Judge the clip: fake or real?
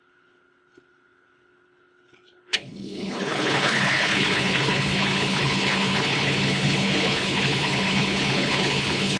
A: fake